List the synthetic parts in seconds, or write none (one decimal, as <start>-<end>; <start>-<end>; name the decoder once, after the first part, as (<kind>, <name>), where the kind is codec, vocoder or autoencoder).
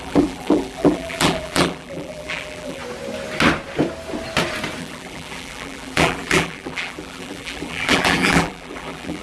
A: 0.0-2.8 (vocoder, BigVGAN v2); 4.8-9.2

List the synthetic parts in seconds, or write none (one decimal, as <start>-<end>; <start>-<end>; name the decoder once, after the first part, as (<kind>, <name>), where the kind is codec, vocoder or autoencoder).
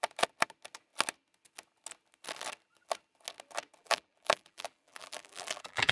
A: 3.8-5.9 (vocoder, BigVGAN v2)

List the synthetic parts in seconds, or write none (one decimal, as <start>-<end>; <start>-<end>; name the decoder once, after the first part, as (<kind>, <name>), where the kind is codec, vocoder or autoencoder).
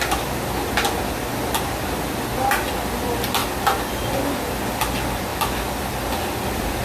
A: 5.3-6.8 (vocoder, BigVGAN v2)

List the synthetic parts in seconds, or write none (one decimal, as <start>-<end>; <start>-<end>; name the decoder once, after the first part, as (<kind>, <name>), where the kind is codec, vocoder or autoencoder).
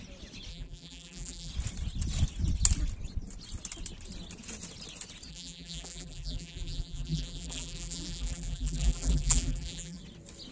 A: 0.5-1.5 (vocoder, BigVGAN v2); 5.3-10.0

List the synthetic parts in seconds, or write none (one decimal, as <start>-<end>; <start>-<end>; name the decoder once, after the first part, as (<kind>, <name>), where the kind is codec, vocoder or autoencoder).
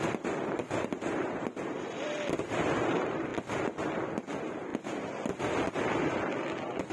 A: 0.0-3.3 (vocoder, BigVGAN v2); 4.1-4.7; 5.7-6.9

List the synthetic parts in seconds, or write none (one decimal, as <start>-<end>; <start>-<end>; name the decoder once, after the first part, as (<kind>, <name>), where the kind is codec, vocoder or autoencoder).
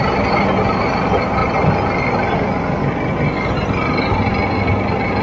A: 0.0-1.4 (vocoder, BigVGAN v2); 4.5-5.2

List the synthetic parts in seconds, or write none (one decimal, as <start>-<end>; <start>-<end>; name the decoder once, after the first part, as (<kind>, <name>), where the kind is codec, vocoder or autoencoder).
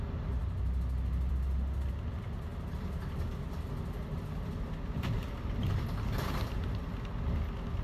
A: none